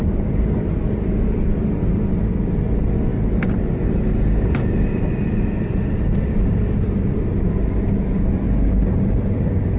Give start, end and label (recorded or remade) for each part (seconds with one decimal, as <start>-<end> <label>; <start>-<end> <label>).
0.0-7.3 remade; 7.3-8.7 recorded; 8.7-9.8 remade